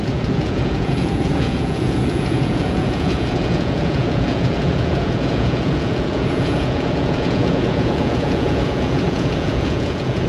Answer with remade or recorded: remade